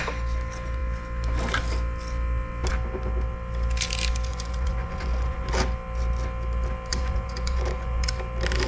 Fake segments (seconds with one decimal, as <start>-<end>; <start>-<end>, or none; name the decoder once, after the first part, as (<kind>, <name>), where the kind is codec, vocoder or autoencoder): 4.3-5.5 (vocoder, Vocos); 6.9-8.1